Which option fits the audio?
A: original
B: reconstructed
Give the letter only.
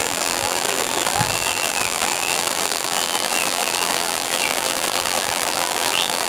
B